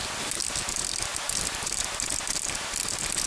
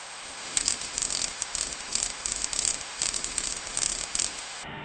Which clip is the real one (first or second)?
first